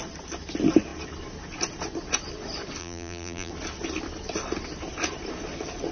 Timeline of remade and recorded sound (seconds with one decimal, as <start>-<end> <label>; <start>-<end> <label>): 0.0-2.8 recorded; 2.8-3.5 remade; 3.5-5.9 recorded